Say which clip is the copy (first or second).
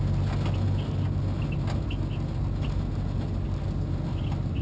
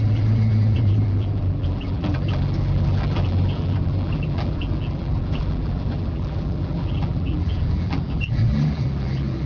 second